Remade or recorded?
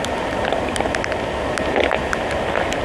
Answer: recorded